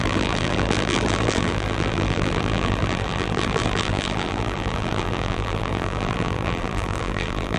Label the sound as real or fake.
fake